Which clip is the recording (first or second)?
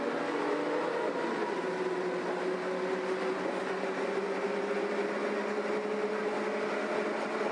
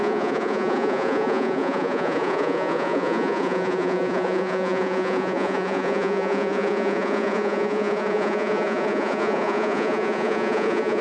first